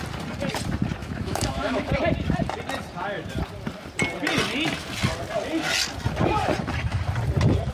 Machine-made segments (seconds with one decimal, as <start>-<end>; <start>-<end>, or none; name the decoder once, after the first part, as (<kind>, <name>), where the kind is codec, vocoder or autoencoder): 1.0-1.9 (autoencoder, DAC-VAE)

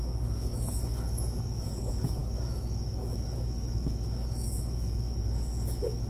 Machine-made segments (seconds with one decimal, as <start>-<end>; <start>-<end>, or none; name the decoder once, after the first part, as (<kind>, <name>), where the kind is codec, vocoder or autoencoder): 0.0-6.1 (autoencoder, DAC-VAE)

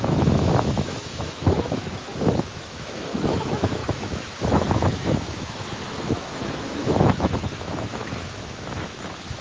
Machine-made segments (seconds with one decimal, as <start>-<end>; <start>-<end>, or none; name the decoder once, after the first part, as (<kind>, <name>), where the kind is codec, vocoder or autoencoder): 0.0-9.4 (autoencoder, DAC-VAE)

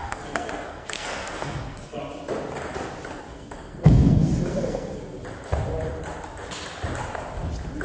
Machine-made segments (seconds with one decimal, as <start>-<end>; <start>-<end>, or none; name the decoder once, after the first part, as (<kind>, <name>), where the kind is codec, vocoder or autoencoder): 0.0-2.0 (codec, SNAC); 3.2-5.0

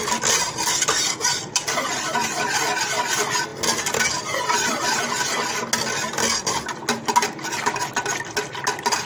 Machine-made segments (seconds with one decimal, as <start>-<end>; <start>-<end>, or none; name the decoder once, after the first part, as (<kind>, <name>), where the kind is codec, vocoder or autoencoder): none

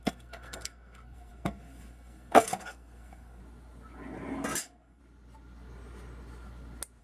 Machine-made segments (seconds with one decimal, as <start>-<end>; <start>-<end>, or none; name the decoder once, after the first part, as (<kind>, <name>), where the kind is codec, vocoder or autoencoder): 0.0-3.4 (codec, SNAC); 4.6-5.0

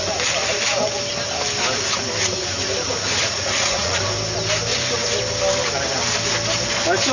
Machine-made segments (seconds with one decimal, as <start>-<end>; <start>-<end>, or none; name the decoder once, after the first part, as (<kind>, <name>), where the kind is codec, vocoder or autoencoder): 3.2-4.0 (vocoder, Vocos)